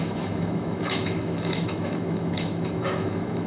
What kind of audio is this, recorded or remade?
remade